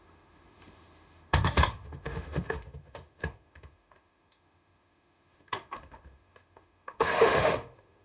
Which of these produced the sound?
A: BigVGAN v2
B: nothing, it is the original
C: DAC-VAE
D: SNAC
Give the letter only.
C